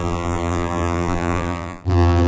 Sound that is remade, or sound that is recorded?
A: remade